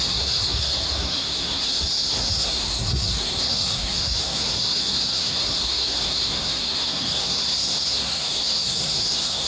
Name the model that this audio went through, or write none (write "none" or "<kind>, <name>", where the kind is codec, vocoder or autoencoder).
codec, SNAC